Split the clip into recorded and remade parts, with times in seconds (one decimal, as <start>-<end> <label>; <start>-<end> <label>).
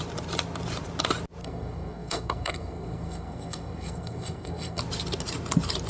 0.0-1.4 recorded; 1.4-4.8 remade; 4.8-5.9 recorded